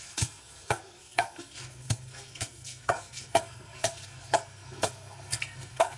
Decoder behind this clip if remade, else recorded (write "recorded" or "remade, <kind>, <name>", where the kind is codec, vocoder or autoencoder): remade, codec, SNAC